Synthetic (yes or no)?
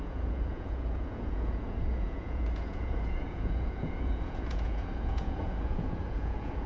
yes